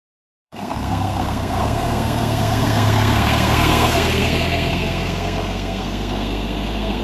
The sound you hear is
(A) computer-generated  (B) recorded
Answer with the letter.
A